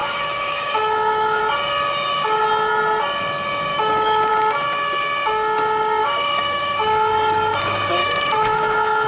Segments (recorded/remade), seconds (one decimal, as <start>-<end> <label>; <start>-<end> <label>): 0.0-1.4 remade; 1.4-3.7 recorded; 3.7-4.3 remade; 4.3-6.0 recorded; 6.0-7.1 remade; 7.1-8.0 recorded; 8.0-9.1 remade